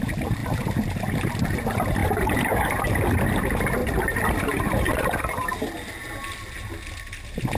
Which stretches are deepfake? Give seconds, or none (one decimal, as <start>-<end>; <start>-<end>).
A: 2.0-3.0; 3.8-5.7